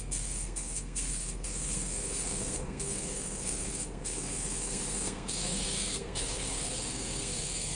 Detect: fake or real fake